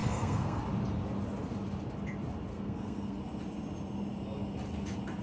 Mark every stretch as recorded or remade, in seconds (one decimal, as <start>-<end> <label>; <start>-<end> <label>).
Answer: 0.0-0.6 remade; 0.6-2.5 recorded; 2.5-3.2 remade; 3.2-5.2 recorded